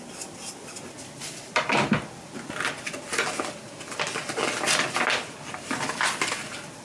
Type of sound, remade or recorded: recorded